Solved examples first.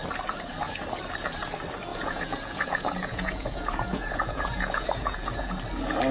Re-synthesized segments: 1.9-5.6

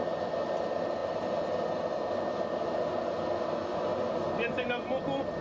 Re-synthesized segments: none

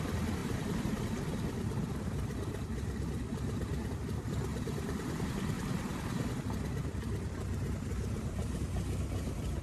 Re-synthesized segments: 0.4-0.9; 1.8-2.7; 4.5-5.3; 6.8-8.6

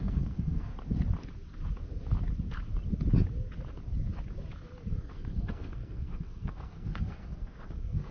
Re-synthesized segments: 0.0-0.7; 4.9-8.1

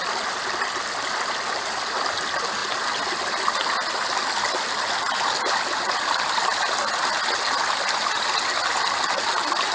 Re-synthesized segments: none

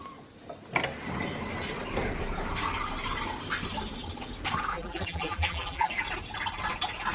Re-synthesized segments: 4.7-6.0

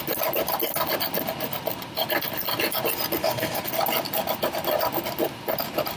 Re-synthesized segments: 3.2-3.7